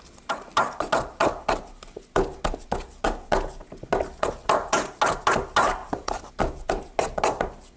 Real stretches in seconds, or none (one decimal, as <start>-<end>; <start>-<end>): 0.0-5.8; 6.3-7.8